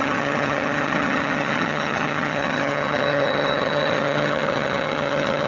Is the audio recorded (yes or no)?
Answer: no